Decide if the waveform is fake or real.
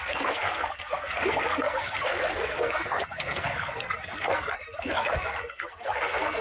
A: fake